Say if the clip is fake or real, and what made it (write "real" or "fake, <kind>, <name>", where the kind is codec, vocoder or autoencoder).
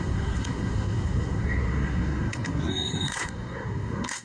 fake, codec, SNAC